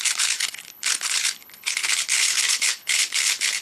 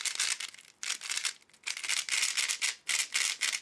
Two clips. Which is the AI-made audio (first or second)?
first